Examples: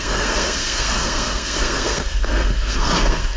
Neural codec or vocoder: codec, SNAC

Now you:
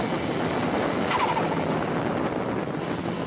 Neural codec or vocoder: none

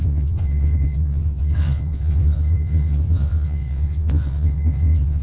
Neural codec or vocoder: vocoder, WaveNeXt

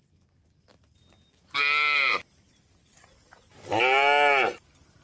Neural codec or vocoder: none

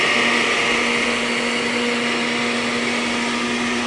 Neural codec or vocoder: none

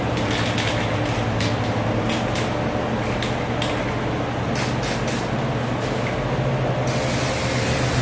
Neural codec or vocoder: none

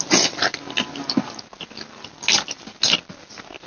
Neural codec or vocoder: none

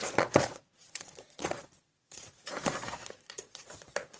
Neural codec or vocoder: vocoder, Vocos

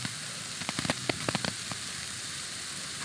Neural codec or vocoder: none